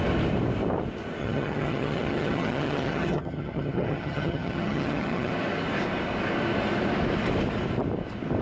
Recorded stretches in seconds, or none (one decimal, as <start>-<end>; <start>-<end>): 0.0-1.2; 5.3-8.4